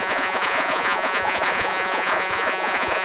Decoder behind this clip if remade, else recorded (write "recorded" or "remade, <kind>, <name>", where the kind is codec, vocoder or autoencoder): remade, vocoder, Vocos